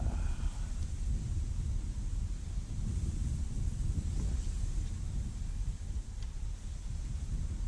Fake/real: real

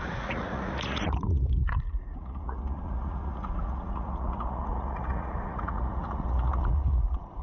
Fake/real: fake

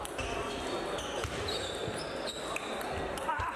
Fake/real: real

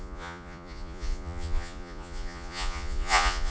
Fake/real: fake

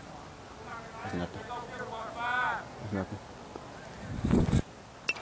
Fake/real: real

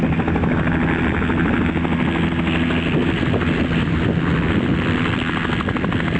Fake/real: real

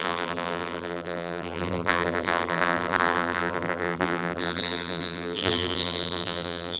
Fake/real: fake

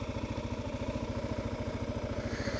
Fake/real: real